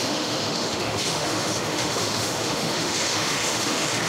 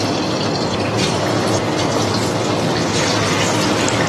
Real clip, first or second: second